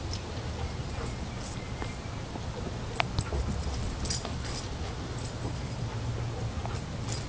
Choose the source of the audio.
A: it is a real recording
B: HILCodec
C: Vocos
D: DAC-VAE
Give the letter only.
A